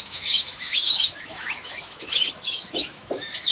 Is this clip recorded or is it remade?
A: remade